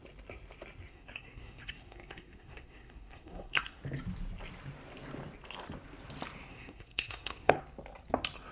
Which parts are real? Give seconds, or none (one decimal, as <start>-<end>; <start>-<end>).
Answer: 0.0-0.9; 3.8-6.5; 7.6-8.5